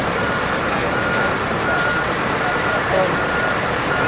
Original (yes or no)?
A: no